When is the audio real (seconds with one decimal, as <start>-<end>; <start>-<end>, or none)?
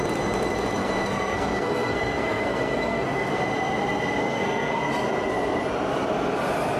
0.0-0.8; 3.4-4.2; 4.8-6.8